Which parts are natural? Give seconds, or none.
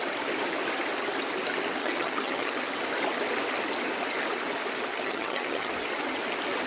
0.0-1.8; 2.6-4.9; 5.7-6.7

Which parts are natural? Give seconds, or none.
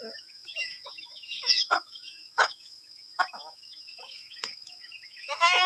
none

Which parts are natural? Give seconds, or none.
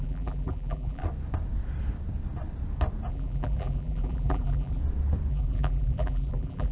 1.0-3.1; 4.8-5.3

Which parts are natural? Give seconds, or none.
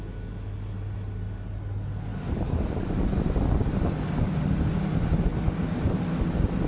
0.0-6.7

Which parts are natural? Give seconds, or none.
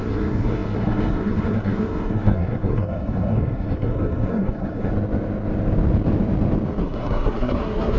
4.9-6.8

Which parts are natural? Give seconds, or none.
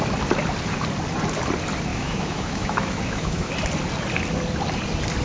0.0-1.9; 3.5-5.2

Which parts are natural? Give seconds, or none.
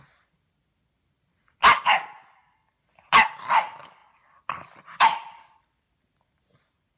0.0-7.0